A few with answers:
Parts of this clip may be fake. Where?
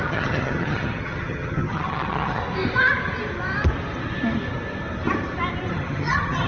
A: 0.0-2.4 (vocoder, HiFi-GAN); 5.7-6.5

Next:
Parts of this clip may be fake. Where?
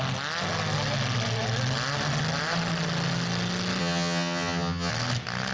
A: 3.8-4.9 (vocoder, HiFi-GAN)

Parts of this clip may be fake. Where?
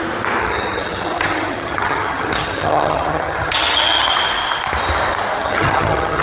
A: 0.4-4.1 (vocoder, HiFi-GAN); 5.4-6.2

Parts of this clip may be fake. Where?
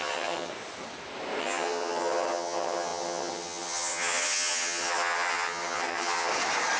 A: 0.0-0.5 (vocoder, HiFi-GAN); 1.4-6.3